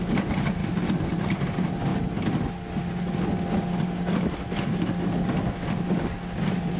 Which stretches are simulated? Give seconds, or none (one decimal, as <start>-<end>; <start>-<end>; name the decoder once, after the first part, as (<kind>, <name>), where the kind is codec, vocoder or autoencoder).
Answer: none

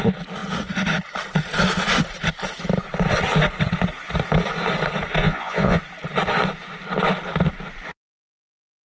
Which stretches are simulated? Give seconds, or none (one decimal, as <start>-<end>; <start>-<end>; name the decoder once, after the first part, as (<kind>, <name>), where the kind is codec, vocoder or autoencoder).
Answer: 5.2-5.8 (vocoder, Vocos)

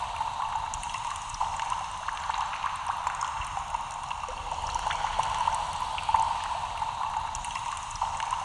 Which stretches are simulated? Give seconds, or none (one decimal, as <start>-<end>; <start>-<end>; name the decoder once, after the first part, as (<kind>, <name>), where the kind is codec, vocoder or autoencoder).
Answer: none

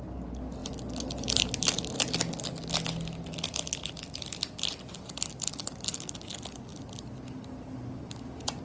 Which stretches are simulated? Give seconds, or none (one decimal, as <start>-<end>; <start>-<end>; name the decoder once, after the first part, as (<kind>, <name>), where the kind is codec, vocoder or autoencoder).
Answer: none

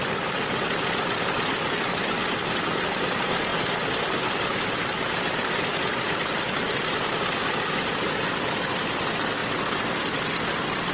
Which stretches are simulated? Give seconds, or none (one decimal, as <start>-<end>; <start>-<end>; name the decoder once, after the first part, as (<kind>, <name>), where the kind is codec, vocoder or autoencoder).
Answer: none

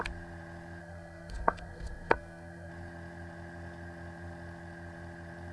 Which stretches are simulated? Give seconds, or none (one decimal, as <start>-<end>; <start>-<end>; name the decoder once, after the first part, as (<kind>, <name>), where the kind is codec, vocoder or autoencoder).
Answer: 0.8-2.7 (codec, SNAC)